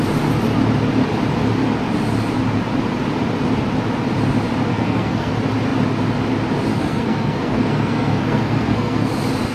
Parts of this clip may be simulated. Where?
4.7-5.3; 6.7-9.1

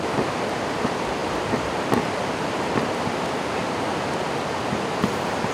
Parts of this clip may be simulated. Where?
none